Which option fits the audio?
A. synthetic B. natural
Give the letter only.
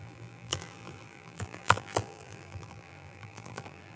A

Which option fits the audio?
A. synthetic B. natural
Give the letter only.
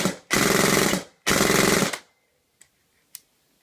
B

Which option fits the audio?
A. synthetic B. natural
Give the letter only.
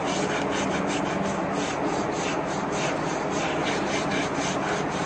B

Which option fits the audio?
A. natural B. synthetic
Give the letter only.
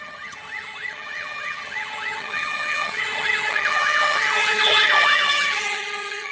B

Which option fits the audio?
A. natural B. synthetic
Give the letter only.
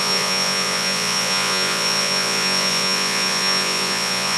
B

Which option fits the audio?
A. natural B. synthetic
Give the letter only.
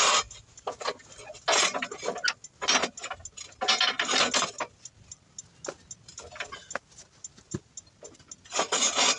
A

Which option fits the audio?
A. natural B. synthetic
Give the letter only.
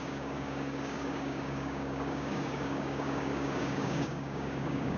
B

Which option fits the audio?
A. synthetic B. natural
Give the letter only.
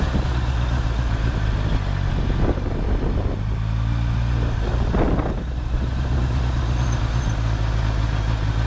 B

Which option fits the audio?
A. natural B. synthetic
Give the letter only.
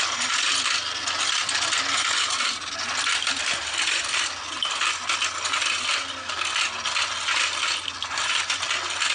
A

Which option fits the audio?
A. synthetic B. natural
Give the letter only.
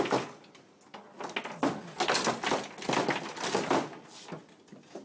B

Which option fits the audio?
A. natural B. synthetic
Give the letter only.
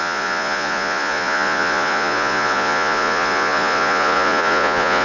B